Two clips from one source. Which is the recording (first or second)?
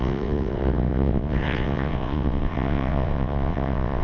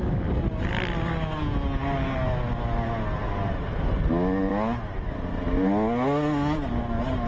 second